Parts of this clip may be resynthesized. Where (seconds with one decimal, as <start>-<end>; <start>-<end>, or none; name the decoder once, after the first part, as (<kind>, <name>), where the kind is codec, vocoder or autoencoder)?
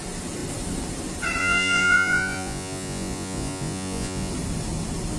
1.4-4.3 (vocoder, Vocos)